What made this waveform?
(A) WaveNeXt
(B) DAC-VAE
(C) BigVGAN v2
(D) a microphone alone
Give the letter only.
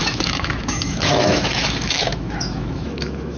B